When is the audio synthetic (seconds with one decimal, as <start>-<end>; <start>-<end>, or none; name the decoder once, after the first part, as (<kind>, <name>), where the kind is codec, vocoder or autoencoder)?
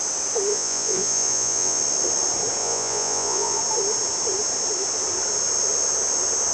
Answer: 0.5-1.8 (vocoder, Vocos); 2.6-3.6